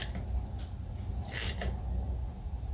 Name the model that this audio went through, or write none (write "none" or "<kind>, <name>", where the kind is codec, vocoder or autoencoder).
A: none